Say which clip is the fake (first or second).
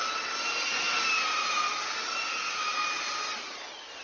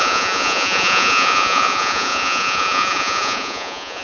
second